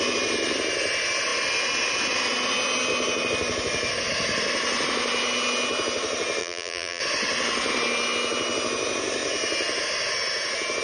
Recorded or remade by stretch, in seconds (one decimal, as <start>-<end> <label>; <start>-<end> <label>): 0.0-6.4 recorded; 6.4-7.0 remade; 7.0-10.8 recorded